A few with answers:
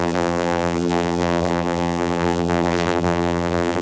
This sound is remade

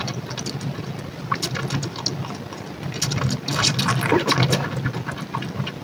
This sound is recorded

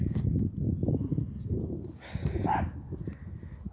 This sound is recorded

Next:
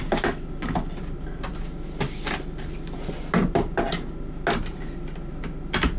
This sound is recorded